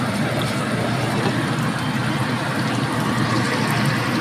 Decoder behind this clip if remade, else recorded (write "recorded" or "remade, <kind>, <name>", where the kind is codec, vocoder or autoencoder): remade, vocoder, BigVGAN v2